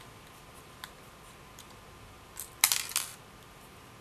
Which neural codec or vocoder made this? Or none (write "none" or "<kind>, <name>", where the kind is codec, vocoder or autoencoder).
none